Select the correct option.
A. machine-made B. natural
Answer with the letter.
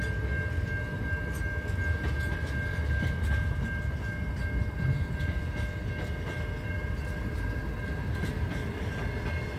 B